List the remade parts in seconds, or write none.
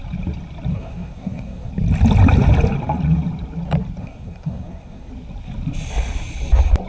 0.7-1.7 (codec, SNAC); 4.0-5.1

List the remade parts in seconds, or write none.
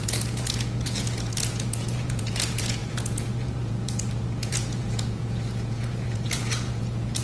0.0-7.2 (vocoder, Vocos)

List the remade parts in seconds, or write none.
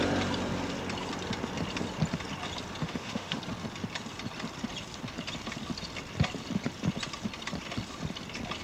2.8-3.4 (autoencoder, DAC-VAE)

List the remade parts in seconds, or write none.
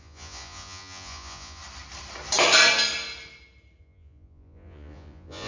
0.0-1.6 (vocoder, Vocos); 3.8-5.5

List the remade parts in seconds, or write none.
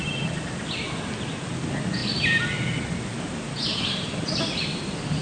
none